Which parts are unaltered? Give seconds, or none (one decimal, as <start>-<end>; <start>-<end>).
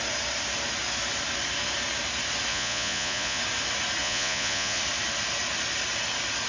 0.0-2.5; 3.4-4.0; 4.8-6.5